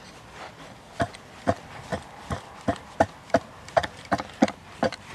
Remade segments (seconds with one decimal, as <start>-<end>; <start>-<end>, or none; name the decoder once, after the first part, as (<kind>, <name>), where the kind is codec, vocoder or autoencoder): 0.0-1.9 (vocoder, BigVGAN v2); 2.8-5.1